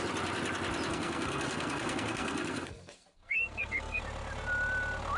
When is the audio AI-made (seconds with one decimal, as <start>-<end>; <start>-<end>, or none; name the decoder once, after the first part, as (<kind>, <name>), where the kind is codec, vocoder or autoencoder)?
0.9-4.0 (codec, SNAC)